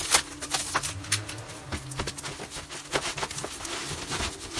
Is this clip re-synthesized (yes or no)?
no